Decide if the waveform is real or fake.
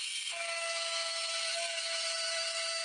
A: fake